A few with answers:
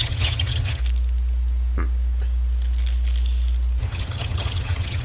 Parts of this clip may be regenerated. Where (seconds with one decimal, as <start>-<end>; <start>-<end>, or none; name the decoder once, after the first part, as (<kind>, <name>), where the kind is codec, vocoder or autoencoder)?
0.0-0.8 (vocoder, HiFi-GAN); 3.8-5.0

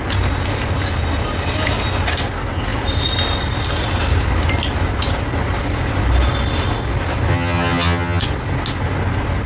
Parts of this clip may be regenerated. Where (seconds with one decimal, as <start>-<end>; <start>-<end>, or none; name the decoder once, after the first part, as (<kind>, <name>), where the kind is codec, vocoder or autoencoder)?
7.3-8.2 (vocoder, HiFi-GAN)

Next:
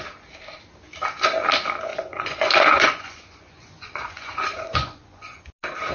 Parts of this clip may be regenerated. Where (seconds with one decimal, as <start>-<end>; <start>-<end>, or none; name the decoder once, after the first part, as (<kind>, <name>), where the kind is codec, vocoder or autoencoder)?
1.9-5.4 (vocoder, Vocos)

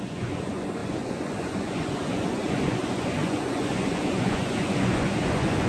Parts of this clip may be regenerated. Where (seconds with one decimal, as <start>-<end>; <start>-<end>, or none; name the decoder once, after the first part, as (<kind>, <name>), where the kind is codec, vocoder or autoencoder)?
0.0-5.7 (vocoder, Vocos)